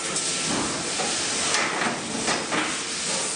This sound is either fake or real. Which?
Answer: real